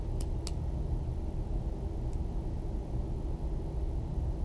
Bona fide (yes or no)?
yes